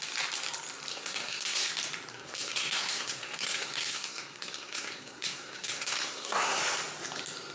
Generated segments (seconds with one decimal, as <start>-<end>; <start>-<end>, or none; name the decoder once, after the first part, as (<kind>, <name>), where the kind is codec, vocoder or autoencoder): 0.9-1.7 (codec, SNAC); 2.1-6.6

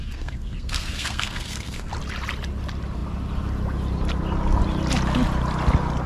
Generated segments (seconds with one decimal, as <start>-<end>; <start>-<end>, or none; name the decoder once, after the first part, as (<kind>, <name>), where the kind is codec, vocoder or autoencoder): 0.0-1.9 (codec, SNAC)

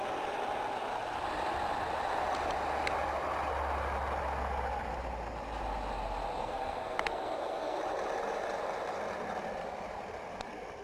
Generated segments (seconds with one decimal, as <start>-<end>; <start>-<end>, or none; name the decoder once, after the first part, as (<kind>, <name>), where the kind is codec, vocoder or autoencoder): 6.4-7.8 (codec, SNAC)

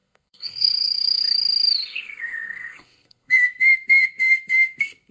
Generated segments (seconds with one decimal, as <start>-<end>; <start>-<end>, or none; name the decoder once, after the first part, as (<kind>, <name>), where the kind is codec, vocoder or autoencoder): 0.0-1.2 (codec, SNAC); 1.9-5.1

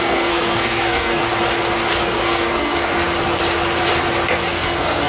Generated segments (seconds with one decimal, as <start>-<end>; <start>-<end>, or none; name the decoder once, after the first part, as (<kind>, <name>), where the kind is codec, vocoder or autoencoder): 0.0-1.2 (codec, SNAC); 2.0-2.9; 4.5-5.1

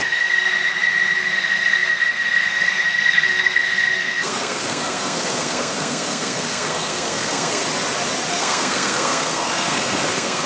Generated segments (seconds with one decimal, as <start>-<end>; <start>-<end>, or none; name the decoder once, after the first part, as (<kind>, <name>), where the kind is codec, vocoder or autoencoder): 0.0-0.5 (codec, SNAC); 1.2-7.6; 8.3-10.5